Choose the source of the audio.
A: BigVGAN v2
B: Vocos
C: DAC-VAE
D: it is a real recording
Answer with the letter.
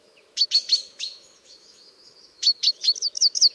C